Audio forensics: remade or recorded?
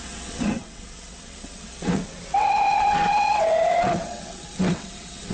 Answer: remade